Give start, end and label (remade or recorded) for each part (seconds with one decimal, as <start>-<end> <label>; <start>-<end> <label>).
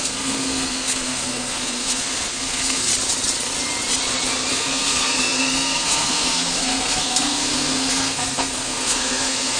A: 0.0-2.9 remade; 2.9-4.5 recorded; 4.5-9.6 remade